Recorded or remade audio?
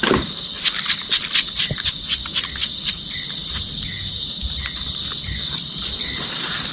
recorded